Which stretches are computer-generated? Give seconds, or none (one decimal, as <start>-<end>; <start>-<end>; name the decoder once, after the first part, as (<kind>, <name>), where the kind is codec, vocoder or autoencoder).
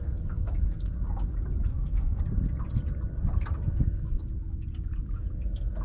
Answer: 1.7-2.2 (codec, SNAC)